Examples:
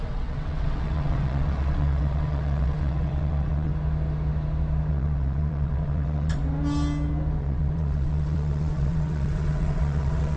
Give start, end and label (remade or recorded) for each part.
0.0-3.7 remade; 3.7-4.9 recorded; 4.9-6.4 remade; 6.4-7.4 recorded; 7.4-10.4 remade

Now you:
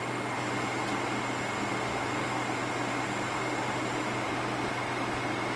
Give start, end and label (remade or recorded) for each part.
0.0-5.6 recorded